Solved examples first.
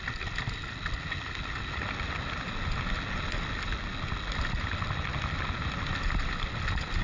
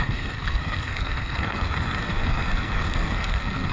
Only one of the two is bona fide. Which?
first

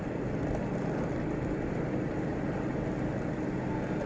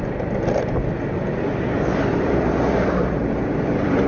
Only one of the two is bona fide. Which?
first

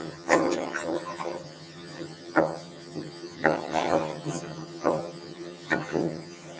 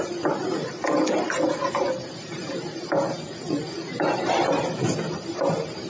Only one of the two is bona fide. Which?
second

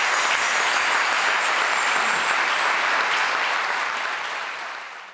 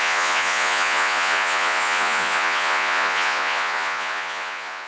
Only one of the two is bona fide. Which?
first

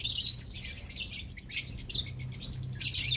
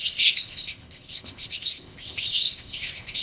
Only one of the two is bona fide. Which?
first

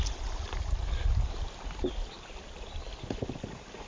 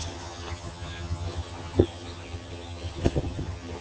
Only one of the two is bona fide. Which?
first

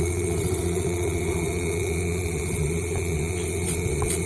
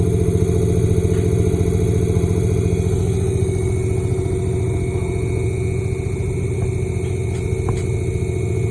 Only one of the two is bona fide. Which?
second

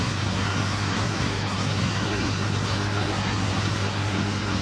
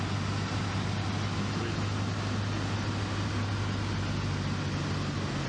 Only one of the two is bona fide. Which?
second